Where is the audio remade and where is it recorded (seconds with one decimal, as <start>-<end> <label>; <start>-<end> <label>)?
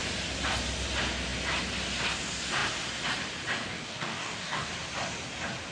0.0-3.7 recorded; 3.7-4.7 remade; 4.7-5.7 recorded